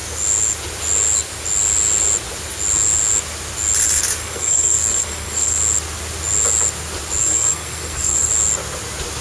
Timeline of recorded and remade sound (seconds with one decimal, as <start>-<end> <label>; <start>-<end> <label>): 0.0-4.2 recorded; 4.2-5.6 remade; 5.6-7.2 recorded; 7.2-8.3 remade; 8.3-9.2 recorded